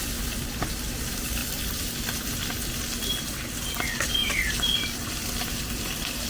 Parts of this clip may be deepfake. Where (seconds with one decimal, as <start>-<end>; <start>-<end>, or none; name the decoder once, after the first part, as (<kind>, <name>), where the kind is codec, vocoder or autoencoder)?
1.4-2.0 (vocoder, BigVGAN v2); 4.2-5.1